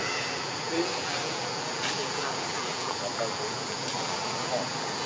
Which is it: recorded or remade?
remade